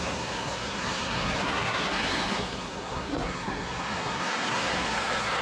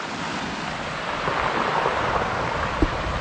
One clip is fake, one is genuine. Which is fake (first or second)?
first